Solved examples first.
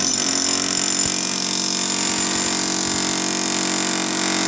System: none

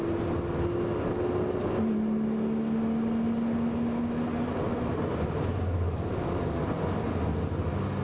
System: none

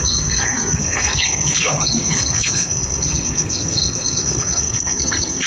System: codec, SNAC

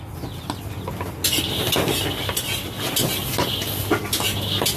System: none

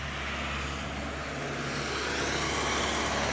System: none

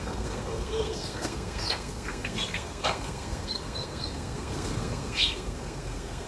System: codec, SNAC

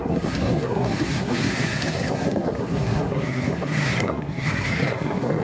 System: codec, SNAC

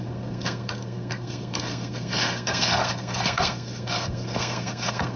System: codec, SNAC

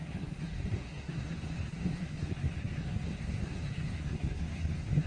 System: codec, SNAC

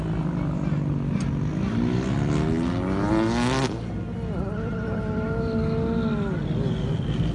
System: none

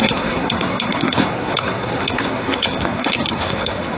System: codec, SNAC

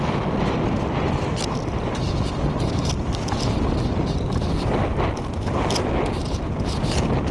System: none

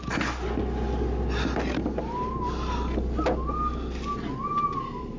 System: none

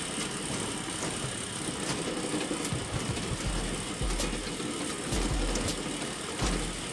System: none